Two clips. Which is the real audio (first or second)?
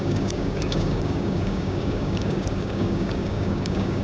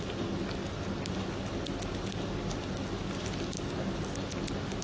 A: second